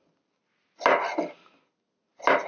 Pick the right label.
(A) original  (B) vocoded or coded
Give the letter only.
A